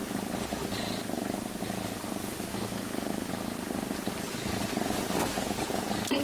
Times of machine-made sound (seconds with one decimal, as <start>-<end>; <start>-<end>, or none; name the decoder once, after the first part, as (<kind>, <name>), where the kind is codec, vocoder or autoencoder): 2.5-3.3 (autoencoder, DAC-VAE)